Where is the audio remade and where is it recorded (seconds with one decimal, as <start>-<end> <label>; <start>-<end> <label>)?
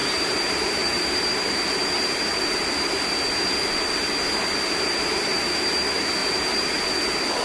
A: 0.0-2.4 remade; 2.4-6.2 recorded; 6.2-6.8 remade; 6.8-7.4 recorded